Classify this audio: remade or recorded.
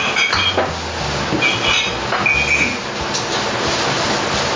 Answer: recorded